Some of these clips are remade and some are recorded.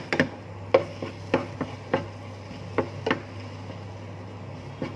recorded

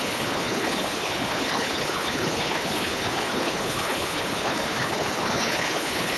remade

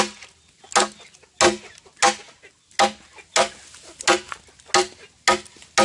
recorded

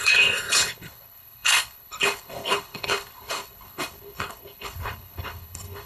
remade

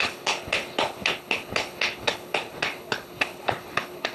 remade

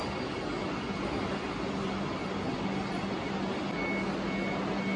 recorded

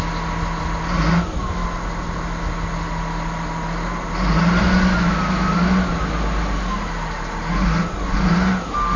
recorded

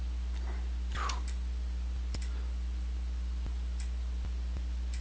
recorded